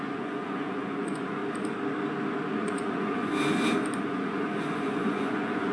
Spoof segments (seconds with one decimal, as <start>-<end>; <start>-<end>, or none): 0.0-1.4; 2.5-3.3; 4.0-5.7